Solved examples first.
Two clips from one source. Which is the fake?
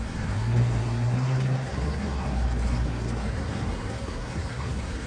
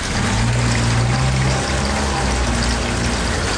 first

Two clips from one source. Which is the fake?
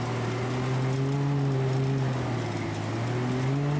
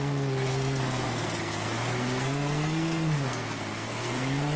second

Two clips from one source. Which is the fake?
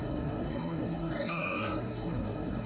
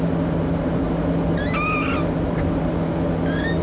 first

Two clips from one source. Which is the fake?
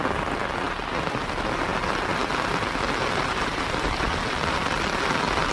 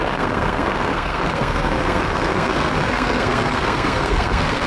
second